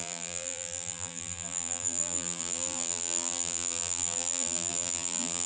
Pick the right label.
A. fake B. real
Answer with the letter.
A